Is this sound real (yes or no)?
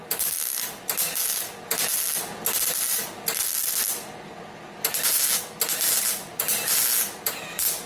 yes